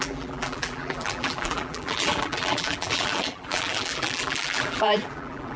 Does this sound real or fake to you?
fake